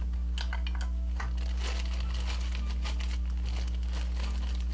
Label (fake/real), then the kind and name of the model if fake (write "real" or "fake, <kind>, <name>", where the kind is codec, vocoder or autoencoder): real